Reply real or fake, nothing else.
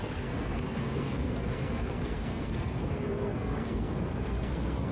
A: fake